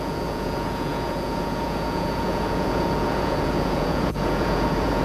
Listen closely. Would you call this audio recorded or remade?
remade